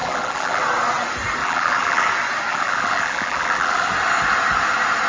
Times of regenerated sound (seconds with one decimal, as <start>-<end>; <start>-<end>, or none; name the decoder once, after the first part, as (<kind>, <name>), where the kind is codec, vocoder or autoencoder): 0.0-0.6 (vocoder, BigVGAN v2); 1.4-2.1; 2.5-3.9